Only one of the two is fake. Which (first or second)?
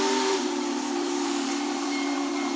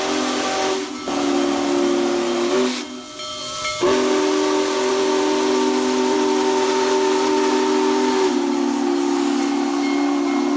first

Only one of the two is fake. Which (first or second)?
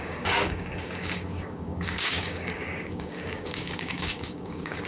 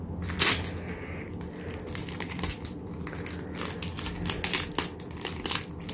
first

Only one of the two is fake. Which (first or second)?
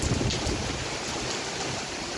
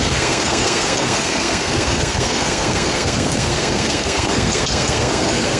second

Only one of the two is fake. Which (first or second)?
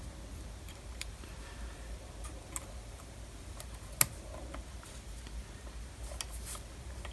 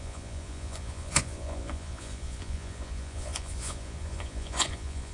second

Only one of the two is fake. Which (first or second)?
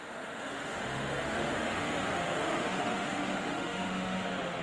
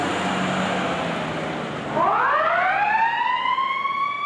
first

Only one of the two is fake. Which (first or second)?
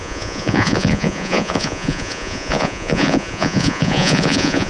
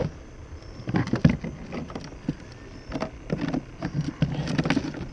first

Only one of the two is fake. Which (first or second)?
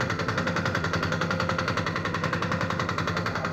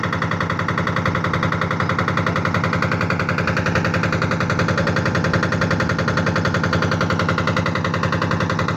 first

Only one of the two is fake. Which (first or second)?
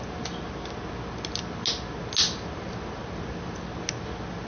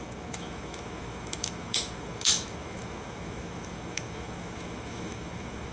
second